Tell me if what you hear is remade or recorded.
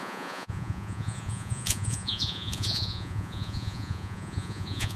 remade